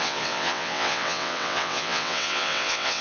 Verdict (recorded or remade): remade